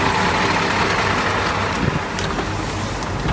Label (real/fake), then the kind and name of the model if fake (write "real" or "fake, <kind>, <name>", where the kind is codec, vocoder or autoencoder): real